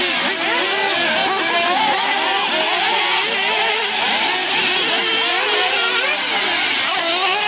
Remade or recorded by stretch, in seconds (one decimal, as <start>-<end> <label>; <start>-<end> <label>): 0.0-7.5 recorded